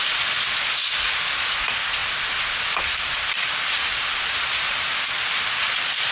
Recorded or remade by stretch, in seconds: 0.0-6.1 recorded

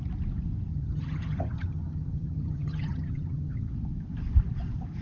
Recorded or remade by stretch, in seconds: 0.0-0.7 recorded; 0.7-3.7 remade; 3.7-5.0 recorded

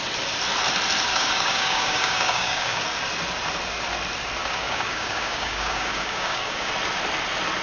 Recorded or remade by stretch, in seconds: 0.0-1.1 recorded; 1.1-2.8 remade; 2.8-4.4 recorded; 4.4-6.7 remade; 6.7-7.6 recorded

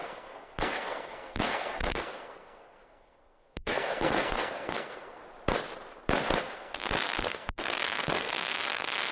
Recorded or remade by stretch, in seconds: 0.0-5.2 remade; 5.2-6.4 recorded; 6.4-9.1 remade

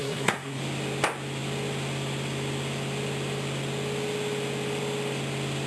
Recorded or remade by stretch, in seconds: 0.0-0.6 remade; 0.6-5.7 recorded

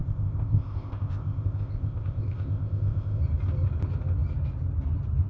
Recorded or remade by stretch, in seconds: 0.0-3.2 remade; 3.2-5.3 recorded